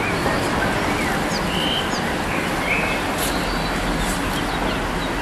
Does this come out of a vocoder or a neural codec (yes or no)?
no